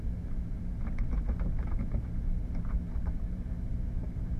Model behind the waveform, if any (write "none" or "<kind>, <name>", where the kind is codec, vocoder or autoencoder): vocoder, BigVGAN v2